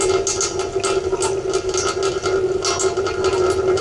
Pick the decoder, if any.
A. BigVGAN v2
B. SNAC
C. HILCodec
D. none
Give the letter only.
D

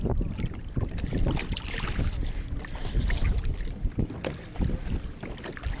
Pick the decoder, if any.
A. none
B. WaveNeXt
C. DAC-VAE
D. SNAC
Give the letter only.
A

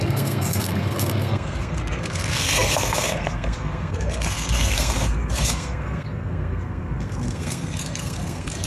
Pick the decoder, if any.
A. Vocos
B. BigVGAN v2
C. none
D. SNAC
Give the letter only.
D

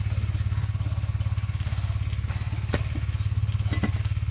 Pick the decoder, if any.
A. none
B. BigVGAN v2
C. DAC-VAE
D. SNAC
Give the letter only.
A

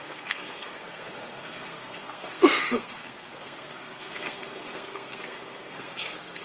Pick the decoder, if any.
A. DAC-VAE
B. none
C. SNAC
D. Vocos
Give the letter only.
C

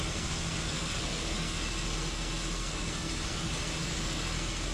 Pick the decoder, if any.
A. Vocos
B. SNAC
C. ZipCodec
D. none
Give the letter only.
B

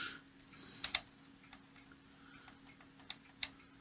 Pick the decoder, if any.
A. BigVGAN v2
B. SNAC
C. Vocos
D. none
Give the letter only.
D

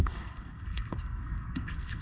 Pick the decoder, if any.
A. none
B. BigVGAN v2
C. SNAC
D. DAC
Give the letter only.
C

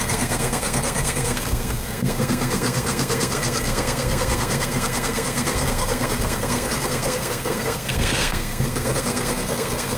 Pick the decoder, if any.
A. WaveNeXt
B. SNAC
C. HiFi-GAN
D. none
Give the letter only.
B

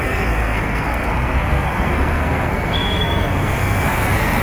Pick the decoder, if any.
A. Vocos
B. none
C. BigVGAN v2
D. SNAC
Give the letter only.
D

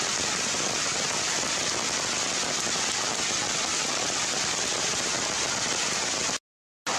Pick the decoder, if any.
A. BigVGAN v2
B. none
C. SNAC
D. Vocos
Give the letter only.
B